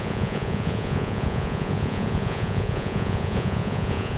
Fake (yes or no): yes